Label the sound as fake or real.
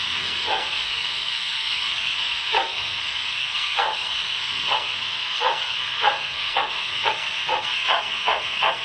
fake